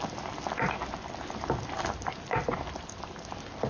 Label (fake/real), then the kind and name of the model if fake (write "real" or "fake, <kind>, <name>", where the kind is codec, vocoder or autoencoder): real